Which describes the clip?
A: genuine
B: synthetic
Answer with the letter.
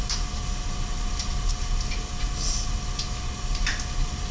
A